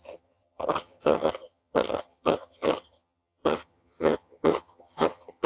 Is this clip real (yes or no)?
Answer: no